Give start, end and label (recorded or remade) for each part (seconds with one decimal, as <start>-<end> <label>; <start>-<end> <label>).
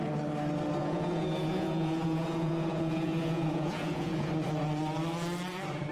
0.0-0.8 recorded; 0.8-4.3 remade; 4.3-5.9 recorded